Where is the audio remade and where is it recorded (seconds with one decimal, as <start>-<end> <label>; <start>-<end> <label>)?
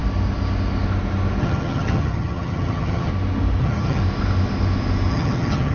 0.0-1.4 recorded; 1.4-3.1 remade; 3.1-3.6 recorded; 3.6-4.0 remade; 4.0-5.1 recorded; 5.1-5.7 remade